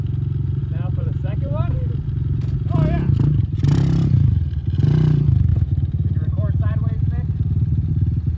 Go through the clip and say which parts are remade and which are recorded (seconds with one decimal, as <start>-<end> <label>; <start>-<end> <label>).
0.0-0.6 recorded; 0.6-1.9 remade; 1.9-3.4 recorded; 3.4-4.3 remade; 4.3-5.5 recorded; 5.5-7.9 remade; 7.9-8.4 recorded